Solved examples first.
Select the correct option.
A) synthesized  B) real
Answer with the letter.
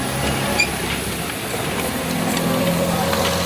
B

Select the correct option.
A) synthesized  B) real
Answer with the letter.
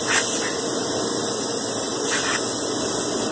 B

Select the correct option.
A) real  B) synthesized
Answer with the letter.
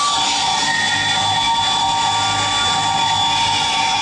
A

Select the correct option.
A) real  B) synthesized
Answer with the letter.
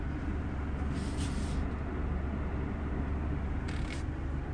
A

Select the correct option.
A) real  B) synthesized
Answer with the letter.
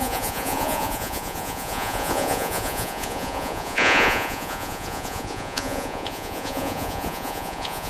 B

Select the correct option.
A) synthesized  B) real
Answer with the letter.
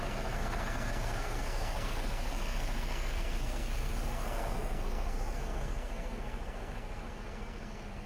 A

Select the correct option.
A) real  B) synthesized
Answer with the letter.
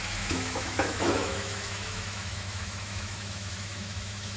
B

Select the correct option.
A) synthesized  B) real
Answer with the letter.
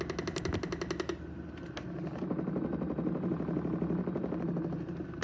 B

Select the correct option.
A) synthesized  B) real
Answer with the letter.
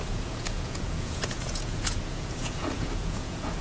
A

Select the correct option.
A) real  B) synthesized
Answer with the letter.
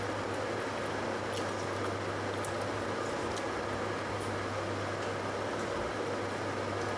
A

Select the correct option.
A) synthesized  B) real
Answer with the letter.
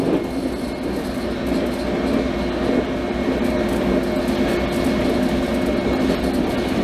B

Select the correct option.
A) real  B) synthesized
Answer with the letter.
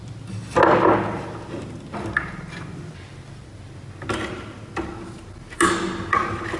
A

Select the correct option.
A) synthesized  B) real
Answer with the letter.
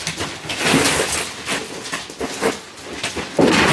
B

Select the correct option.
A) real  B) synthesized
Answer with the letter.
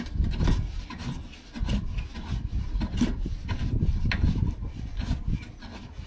A